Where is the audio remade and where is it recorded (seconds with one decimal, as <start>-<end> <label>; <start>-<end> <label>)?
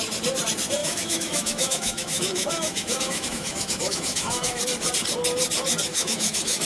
0.0-0.8 recorded; 0.8-4.6 remade; 4.6-5.9 recorded; 5.9-6.6 remade